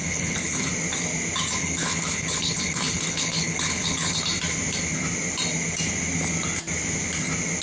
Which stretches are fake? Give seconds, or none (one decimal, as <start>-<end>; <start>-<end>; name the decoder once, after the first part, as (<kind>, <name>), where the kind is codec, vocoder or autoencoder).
0.0-0.7 (codec, HILCodec); 1.6-4.2

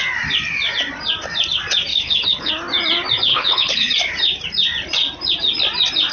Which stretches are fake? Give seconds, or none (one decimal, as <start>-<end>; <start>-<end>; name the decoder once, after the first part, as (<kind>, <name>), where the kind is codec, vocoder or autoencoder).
1.9-2.5 (codec, HILCodec); 3.3-3.9

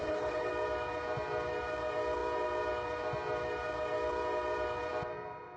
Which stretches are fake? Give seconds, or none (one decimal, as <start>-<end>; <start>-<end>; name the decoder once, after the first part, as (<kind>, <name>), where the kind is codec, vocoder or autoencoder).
0.0-0.5 (codec, HILCodec)

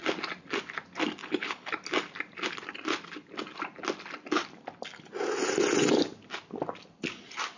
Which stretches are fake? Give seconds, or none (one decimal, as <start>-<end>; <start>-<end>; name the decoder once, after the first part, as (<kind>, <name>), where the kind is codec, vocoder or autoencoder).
1.2-1.7 (codec, HILCodec)